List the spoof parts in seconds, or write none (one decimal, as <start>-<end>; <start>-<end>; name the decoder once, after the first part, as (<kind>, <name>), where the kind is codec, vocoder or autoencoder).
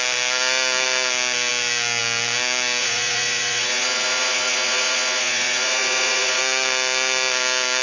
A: 2.8-6.4 (vocoder, Vocos)